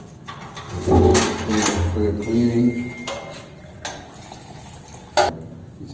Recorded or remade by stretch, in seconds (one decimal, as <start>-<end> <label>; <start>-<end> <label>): 0.0-5.9 recorded